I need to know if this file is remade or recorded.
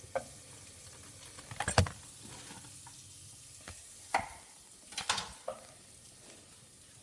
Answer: recorded